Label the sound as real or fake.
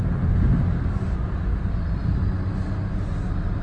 real